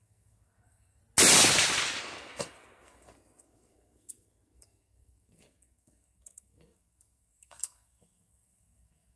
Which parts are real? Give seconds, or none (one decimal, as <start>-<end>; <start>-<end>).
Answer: 1.0-2.0